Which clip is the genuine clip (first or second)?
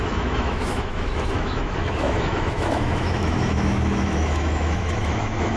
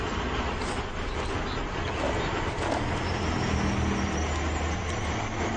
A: second